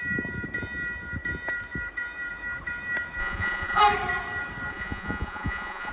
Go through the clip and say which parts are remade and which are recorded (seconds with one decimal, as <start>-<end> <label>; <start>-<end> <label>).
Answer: 0.0-3.2 recorded; 3.2-3.8 remade; 3.8-4.7 recorded; 4.7-5.9 remade